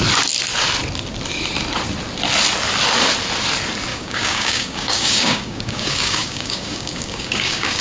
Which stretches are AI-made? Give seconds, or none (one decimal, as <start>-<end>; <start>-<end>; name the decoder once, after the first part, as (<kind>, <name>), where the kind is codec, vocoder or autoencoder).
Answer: 3.9-7.8 (codec, DAC)